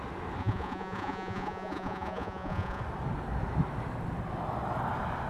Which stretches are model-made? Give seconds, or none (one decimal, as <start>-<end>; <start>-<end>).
0.4-2.8